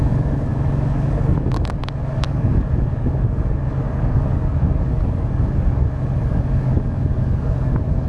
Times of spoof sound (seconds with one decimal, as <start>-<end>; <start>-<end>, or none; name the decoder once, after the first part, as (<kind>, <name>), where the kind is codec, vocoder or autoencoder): 0.0-8.1 (codec, DAC)